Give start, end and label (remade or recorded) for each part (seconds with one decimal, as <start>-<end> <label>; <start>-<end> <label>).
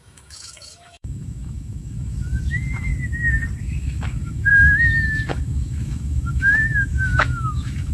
0.0-2.9 remade; 2.9-3.6 recorded; 3.6-7.9 remade